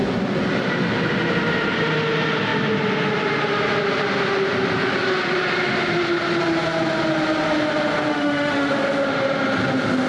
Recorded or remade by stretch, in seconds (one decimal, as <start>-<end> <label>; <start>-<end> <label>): 0.0-8.1 recorded; 8.1-8.7 remade; 8.7-10.1 recorded